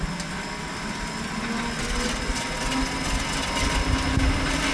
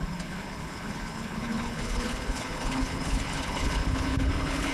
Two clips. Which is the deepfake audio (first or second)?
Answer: second